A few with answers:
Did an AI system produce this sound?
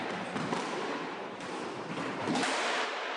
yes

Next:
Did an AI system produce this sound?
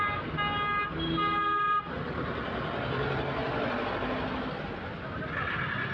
no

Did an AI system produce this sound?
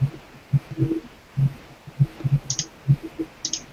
no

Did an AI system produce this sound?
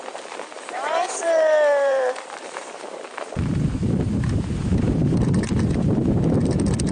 yes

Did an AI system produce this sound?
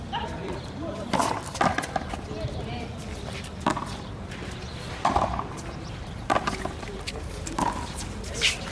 yes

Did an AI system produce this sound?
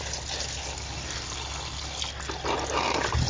no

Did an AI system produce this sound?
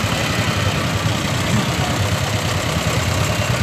yes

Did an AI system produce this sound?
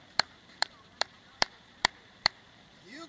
yes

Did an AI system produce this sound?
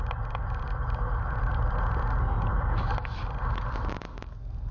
yes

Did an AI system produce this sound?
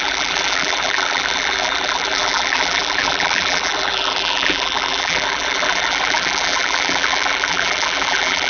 yes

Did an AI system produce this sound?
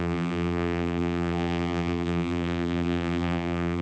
yes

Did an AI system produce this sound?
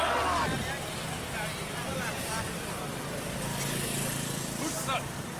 no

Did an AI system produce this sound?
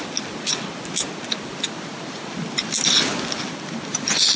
no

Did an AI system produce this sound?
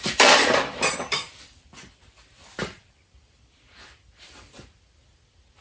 yes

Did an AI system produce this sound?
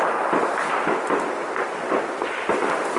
no